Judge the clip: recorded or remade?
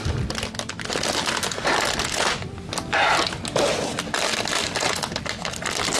recorded